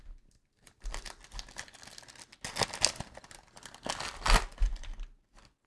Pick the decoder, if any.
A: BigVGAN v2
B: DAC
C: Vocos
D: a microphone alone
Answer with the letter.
D